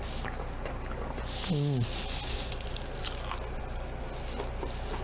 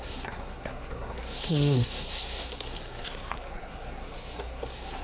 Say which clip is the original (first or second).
first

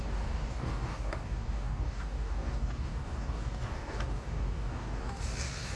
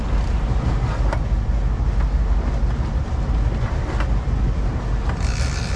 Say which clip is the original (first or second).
second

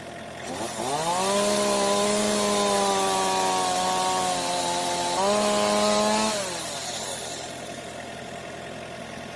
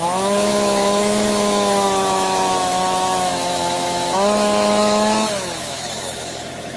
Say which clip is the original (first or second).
first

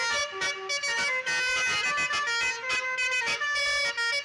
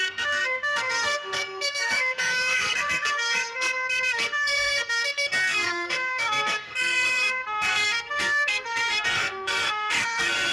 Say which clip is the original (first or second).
first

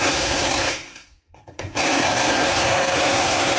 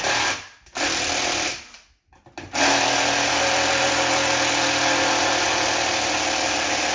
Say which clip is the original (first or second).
second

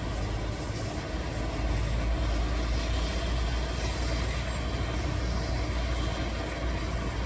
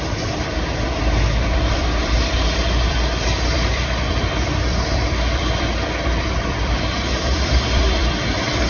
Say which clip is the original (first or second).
first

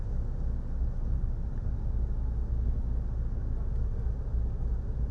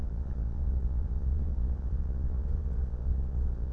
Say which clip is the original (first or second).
first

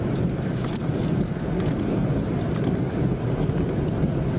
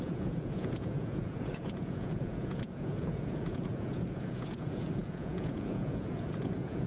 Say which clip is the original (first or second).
first